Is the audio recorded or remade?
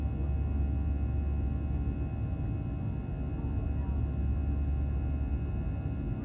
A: recorded